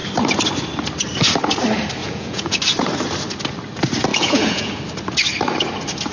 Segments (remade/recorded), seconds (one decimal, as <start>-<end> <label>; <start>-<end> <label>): 0.0-2.0 recorded; 2.0-2.6 remade; 2.6-4.1 recorded; 4.1-4.8 remade; 4.8-6.1 recorded